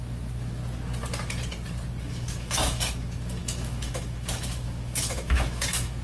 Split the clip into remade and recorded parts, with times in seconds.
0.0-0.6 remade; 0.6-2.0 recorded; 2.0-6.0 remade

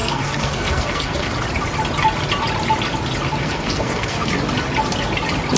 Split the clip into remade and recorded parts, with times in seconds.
0.0-1.3 remade; 1.3-3.4 recorded; 3.4-4.3 remade; 4.3-5.6 recorded

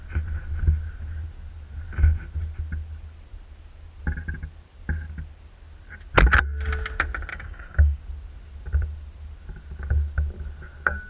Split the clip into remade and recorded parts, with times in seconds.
0.0-7.3 recorded; 7.3-8.0 remade; 8.0-11.1 recorded

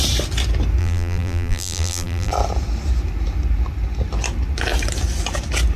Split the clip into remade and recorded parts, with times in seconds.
0.0-0.8 recorded; 0.8-2.3 remade; 2.3-5.8 recorded